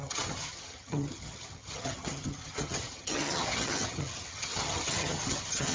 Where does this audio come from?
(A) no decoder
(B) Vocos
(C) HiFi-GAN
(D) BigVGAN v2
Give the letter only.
C